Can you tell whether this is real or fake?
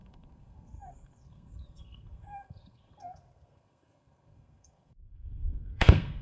fake